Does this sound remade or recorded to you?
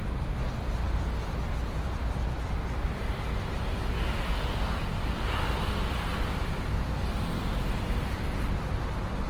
recorded